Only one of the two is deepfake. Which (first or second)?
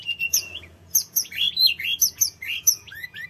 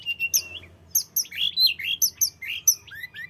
first